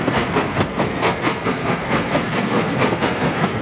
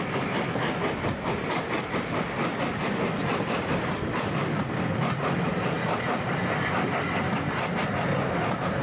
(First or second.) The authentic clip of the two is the second